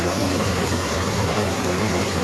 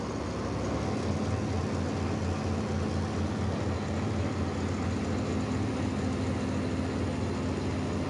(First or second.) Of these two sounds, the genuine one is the second